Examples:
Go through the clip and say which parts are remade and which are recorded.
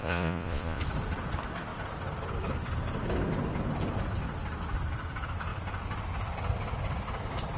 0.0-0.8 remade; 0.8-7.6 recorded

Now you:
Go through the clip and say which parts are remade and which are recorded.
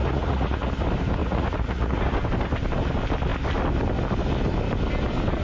0.0-0.7 remade; 0.7-1.2 recorded; 1.2-2.0 remade; 2.0-5.4 recorded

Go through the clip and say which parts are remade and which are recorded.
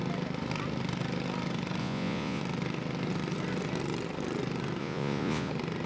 0.0-1.8 recorded; 1.8-2.4 remade; 2.4-4.8 recorded; 4.8-5.5 remade; 5.5-5.9 recorded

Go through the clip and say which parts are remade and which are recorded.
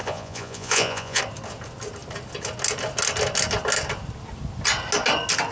0.0-1.2 remade; 1.2-5.5 recorded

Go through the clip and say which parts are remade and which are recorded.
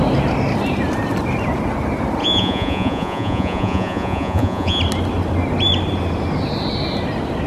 0.0-2.2 recorded; 2.2-4.8 remade; 4.8-7.5 recorded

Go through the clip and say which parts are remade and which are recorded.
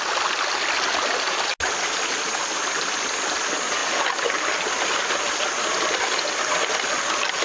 0.0-7.4 recorded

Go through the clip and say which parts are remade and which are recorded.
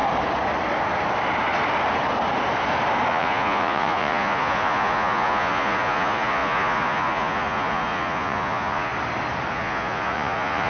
0.0-3.1 recorded; 3.1-8.9 remade; 8.9-9.5 recorded; 9.5-10.7 remade